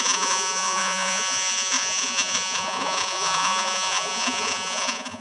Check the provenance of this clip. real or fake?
fake